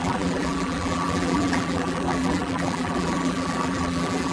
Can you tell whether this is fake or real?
fake